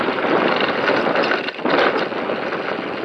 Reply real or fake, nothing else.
real